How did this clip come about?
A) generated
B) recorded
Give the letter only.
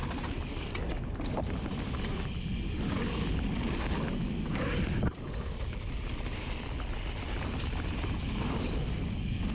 B